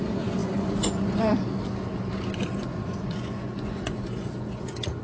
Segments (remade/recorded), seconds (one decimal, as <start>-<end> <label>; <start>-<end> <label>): 0.0-0.4 recorded; 0.4-1.3 remade; 1.3-2.6 recorded; 2.6-5.0 remade